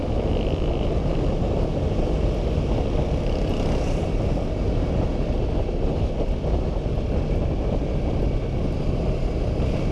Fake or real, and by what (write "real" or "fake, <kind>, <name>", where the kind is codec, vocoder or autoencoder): real